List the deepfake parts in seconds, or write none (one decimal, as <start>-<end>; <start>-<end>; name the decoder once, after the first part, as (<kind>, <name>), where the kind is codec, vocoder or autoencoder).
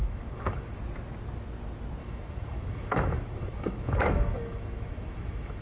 0.0-0.8 (autoencoder, DAC-VAE); 2.0-5.6